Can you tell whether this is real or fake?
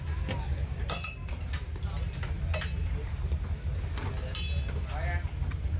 real